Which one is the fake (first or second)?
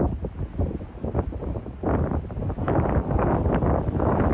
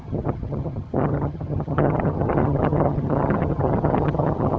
second